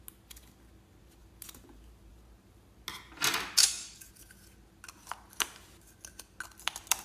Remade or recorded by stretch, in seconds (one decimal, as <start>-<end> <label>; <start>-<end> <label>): 0.0-3.6 recorded; 3.6-4.1 remade; 4.1-7.0 recorded